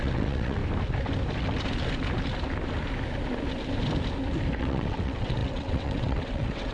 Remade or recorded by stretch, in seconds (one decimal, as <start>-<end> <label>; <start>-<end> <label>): 0.0-0.6 remade; 0.6-4.6 recorded; 4.6-6.7 remade